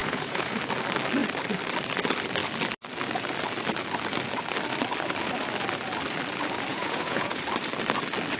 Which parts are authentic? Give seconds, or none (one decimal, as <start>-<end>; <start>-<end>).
0.6-6.7; 7.4-8.4